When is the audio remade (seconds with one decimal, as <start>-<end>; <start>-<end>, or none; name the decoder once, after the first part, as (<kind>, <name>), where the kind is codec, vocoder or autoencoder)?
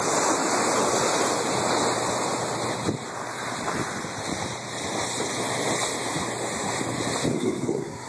7.3-8.1 (codec, SNAC)